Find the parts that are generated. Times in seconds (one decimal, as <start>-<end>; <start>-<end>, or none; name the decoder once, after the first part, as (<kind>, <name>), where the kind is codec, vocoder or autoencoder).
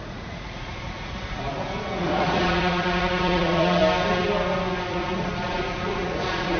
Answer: 0.0-3.8 (vocoder, Vocos); 4.9-6.6